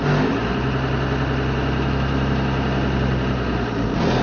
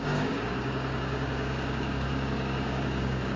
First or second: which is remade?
second